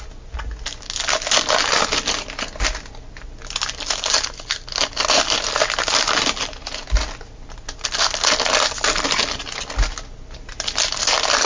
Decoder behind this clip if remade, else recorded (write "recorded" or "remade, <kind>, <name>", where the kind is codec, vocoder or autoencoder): recorded